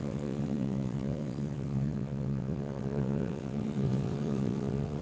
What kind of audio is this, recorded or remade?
remade